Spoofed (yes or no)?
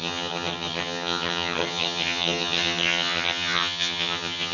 yes